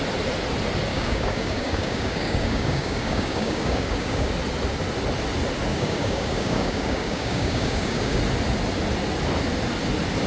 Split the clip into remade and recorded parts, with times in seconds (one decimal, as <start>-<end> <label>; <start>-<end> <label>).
0.0-0.9 recorded; 0.9-4.3 remade; 4.3-5.7 recorded; 5.7-8.2 remade; 8.2-10.3 recorded